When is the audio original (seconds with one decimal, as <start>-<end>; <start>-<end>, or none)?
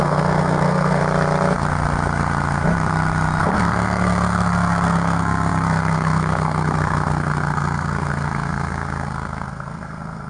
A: 1.0-3.4